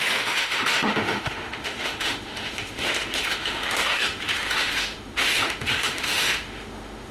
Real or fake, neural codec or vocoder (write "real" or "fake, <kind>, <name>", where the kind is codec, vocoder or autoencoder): fake, autoencoder, DAC-VAE